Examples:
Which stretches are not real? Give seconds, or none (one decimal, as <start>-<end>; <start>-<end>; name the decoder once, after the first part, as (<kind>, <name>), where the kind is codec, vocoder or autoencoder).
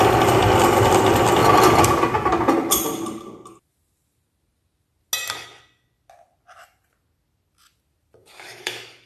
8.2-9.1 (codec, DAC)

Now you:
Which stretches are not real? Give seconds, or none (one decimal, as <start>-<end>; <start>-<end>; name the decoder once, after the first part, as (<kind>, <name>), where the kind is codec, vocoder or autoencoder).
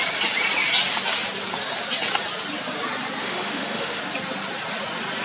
3.2-4.0 (autoencoder, DAC-VAE)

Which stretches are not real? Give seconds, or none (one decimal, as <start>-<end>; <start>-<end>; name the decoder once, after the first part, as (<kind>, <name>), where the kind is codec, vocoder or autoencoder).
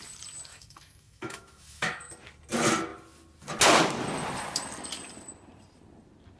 0.5-2.1 (autoencoder, DAC-VAE)